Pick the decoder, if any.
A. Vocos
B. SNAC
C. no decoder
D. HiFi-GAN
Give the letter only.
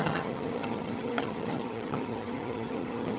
D